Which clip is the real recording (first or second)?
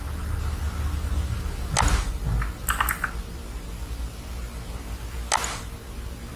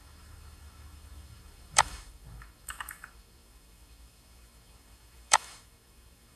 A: first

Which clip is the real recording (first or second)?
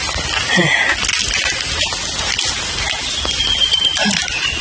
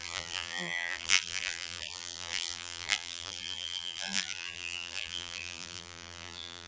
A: first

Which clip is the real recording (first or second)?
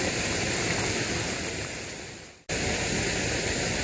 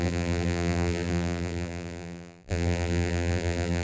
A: first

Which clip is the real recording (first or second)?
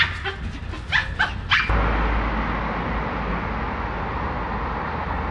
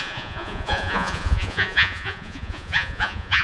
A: first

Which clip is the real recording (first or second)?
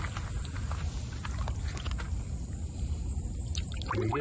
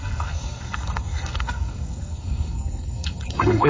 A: first